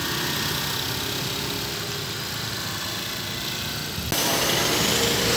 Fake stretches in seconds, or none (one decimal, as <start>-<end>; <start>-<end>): none